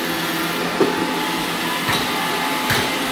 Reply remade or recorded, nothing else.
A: recorded